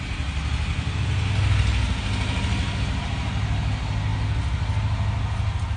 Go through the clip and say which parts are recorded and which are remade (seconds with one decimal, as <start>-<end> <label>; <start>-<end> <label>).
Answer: 0.0-5.8 recorded